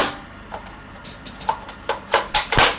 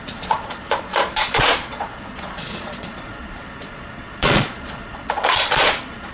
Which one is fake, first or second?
second